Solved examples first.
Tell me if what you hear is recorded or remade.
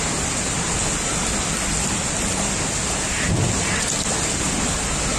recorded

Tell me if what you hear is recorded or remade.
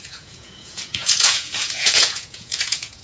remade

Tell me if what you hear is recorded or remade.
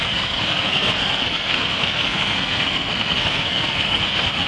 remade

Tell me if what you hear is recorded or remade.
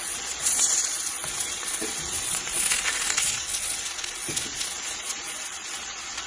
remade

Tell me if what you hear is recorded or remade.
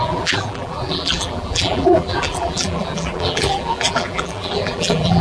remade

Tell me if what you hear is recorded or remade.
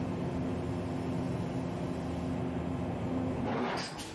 recorded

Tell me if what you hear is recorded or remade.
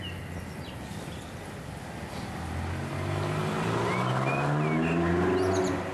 recorded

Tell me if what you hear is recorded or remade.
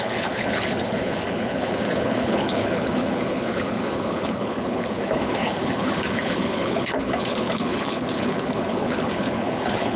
remade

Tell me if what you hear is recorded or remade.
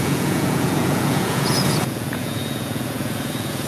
remade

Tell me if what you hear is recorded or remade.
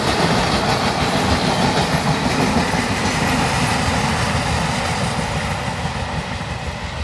recorded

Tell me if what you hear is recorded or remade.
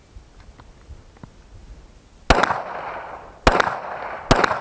recorded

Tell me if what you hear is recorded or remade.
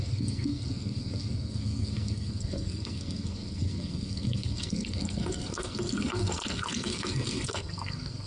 remade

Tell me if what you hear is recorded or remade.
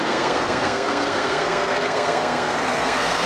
remade